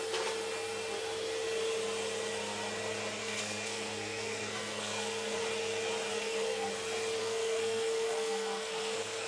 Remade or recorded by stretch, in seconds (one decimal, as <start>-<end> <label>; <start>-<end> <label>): 0.0-3.2 recorded; 3.2-5.4 remade; 5.4-6.1 recorded; 6.1-6.7 remade; 6.7-7.2 recorded; 7.2-9.3 remade